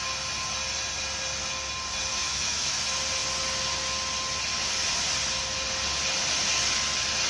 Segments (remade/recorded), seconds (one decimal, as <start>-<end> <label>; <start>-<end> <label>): 0.0-2.1 recorded; 2.1-2.8 remade; 2.8-7.3 recorded